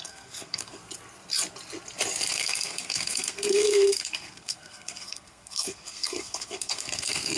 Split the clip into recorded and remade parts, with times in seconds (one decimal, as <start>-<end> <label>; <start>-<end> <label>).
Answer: 0.0-0.8 remade; 0.8-2.3 recorded; 2.3-7.4 remade